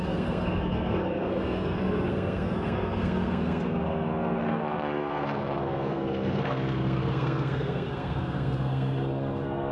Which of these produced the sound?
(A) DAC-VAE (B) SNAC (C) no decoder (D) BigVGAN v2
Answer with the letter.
B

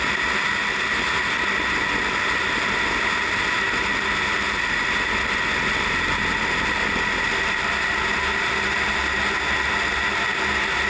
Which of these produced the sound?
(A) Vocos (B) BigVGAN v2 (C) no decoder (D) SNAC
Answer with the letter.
C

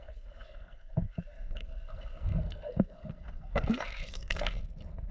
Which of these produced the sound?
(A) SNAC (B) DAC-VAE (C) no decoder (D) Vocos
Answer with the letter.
A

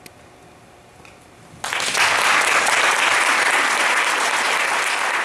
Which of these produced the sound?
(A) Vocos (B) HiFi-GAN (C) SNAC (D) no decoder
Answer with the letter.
D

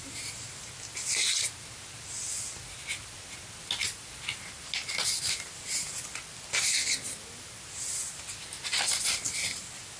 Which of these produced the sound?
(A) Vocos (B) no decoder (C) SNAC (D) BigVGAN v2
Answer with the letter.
B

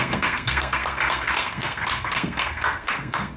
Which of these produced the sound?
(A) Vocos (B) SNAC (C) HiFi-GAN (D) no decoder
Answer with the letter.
B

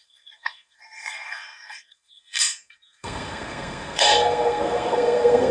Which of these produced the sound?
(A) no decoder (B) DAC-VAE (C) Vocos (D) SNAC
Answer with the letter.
D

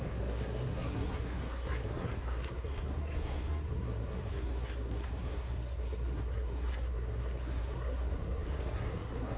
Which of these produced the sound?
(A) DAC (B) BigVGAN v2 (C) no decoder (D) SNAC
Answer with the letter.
D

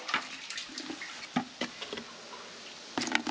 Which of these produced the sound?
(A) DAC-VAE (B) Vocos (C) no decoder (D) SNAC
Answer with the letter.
C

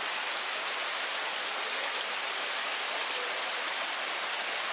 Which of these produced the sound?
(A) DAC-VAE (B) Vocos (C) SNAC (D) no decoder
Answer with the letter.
D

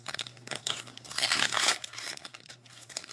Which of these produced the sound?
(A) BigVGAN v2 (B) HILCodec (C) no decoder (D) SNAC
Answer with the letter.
D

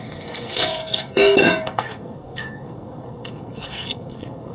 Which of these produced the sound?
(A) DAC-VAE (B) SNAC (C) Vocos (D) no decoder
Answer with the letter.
B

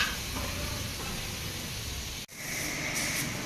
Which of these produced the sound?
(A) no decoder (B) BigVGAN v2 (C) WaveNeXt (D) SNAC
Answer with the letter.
A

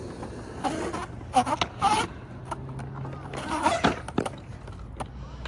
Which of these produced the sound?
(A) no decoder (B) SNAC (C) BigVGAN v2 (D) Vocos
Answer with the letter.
A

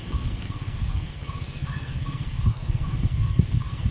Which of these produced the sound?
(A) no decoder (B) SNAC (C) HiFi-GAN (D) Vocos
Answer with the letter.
B